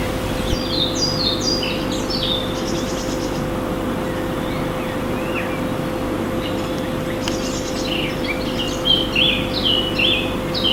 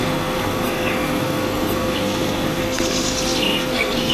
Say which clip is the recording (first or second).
first